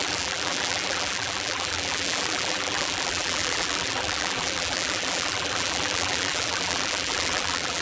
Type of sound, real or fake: fake